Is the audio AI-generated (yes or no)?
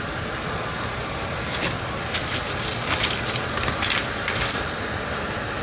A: no